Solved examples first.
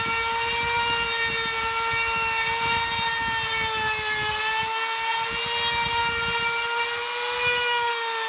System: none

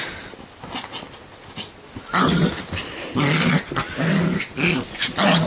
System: none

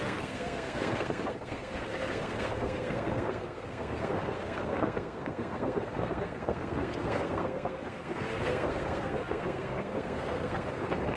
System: codec, SNAC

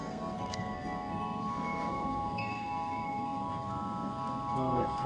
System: codec, SNAC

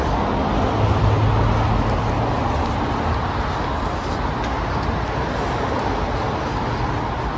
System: none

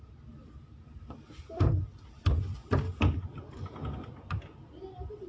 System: none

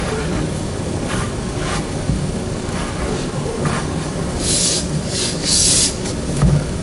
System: codec, DAC